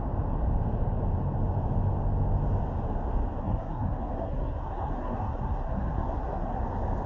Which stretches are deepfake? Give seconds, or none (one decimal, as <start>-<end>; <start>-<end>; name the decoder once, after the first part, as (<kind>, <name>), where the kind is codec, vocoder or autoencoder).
3.4-6.6 (codec, SNAC)